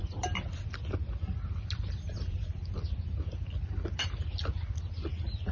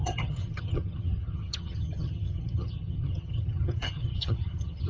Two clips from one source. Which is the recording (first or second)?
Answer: first